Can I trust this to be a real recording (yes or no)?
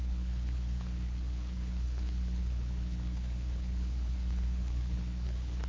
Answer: no